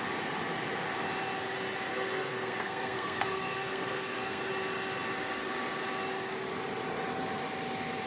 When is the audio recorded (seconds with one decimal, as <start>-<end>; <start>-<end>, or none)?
0.0-1.9; 4.4-8.1